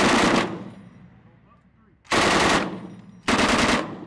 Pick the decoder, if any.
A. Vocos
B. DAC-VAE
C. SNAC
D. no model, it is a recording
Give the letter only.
D